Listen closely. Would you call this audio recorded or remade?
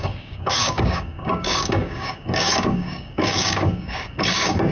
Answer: remade